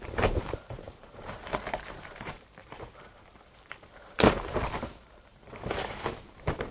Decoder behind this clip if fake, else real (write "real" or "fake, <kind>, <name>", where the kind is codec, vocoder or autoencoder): fake, vocoder, BigVGAN v2